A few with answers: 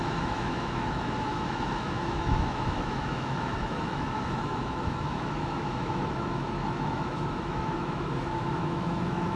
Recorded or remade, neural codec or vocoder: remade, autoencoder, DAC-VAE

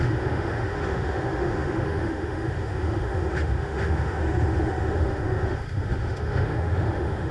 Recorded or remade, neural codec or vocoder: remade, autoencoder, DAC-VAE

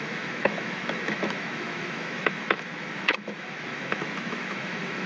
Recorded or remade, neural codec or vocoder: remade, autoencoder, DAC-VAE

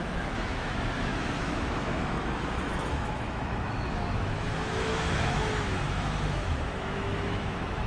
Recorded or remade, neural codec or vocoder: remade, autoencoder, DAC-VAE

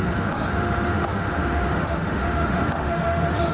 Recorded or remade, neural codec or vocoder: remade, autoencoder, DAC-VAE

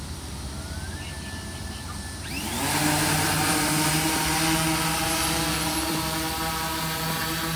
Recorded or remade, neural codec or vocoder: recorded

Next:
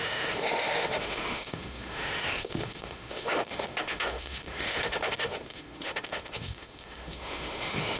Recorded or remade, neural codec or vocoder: remade, autoencoder, DAC-VAE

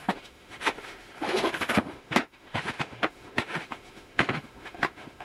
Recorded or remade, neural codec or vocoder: remade, autoencoder, DAC-VAE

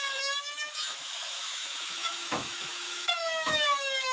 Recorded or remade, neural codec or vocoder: remade, autoencoder, DAC-VAE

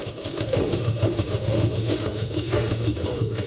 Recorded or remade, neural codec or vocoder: remade, autoencoder, DAC-VAE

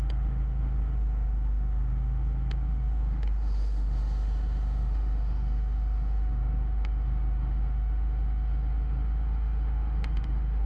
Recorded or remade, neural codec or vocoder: remade, autoencoder, DAC-VAE